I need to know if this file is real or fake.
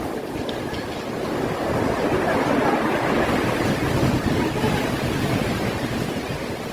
real